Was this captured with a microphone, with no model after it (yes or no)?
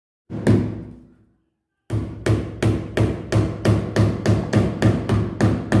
yes